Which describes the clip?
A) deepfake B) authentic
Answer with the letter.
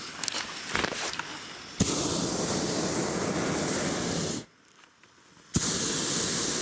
B